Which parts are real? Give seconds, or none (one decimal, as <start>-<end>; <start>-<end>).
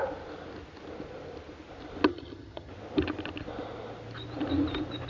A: 0.0-2.1; 2.7-5.1